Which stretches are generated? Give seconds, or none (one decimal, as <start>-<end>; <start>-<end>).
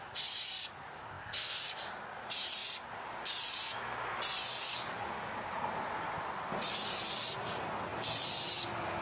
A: 1.0-1.6